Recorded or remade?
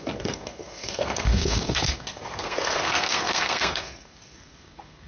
remade